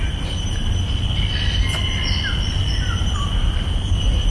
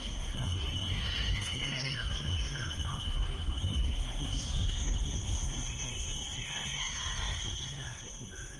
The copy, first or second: second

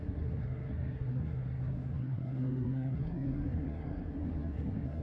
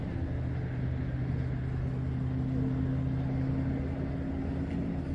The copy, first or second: first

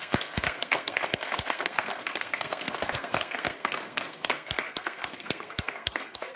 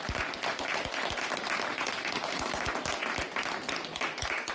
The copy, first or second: first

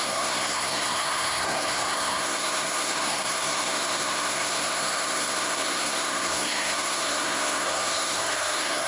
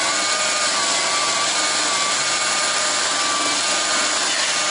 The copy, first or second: first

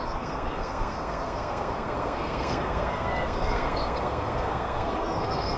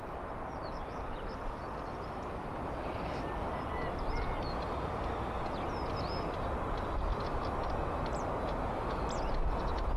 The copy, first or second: first